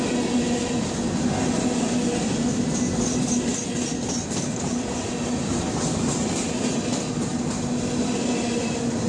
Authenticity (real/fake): real